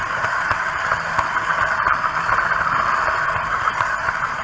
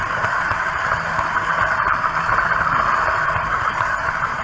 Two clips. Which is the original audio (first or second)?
first